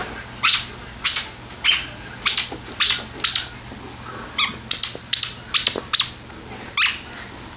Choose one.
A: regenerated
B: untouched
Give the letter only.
B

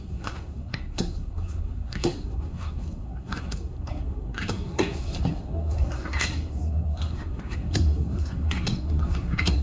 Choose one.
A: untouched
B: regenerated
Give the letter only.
B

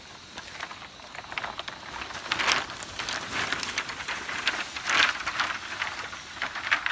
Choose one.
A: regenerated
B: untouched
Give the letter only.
B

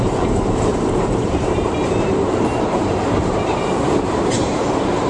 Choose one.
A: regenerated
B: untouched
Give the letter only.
A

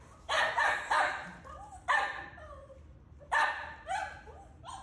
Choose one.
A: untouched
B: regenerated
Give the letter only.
A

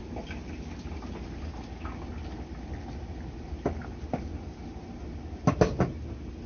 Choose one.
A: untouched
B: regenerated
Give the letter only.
A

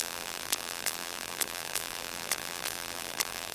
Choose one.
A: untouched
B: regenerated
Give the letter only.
B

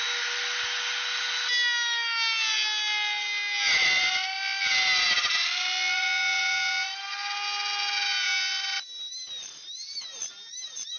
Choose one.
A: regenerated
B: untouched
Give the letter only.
B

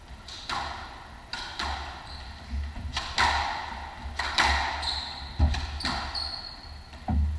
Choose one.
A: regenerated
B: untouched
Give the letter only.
B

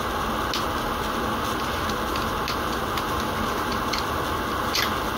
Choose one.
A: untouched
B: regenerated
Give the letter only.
A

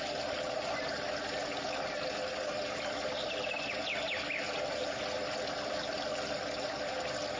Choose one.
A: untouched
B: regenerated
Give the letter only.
A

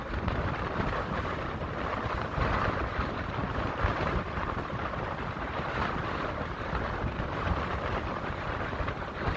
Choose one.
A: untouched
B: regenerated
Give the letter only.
B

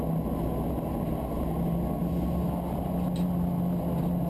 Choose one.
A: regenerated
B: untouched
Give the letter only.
B